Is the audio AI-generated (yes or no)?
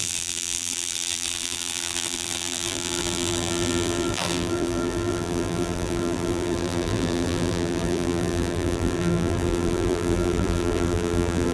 yes